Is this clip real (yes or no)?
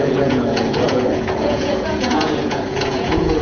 no